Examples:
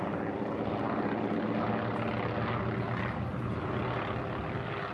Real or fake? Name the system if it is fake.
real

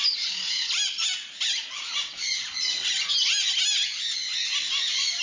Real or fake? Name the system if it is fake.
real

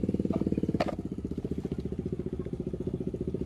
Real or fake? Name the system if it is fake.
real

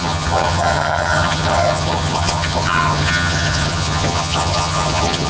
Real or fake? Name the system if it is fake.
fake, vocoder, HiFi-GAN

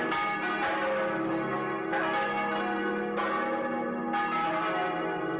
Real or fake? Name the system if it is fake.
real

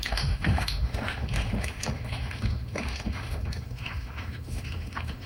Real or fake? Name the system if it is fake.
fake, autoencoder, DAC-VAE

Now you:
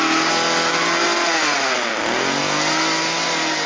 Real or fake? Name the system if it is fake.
real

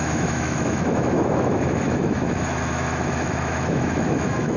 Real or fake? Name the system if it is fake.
fake, autoencoder, DAC-VAE